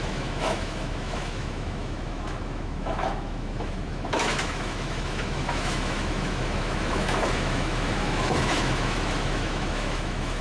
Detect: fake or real fake